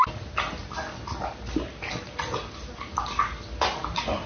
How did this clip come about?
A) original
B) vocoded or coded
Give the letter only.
A